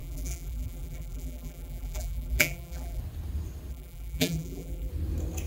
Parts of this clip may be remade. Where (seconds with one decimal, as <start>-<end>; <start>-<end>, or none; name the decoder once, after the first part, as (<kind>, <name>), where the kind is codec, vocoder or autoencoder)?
0.0-3.0 (vocoder, BigVGAN v2); 3.7-4.9